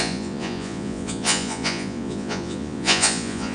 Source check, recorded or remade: remade